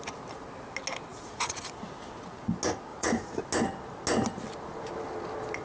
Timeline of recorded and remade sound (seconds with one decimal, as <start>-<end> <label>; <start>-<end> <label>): 0.0-1.1 recorded; 1.1-1.7 remade; 1.7-2.9 recorded; 2.9-3.4 remade; 3.4-5.6 recorded